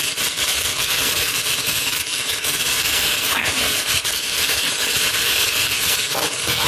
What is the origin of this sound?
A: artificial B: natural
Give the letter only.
A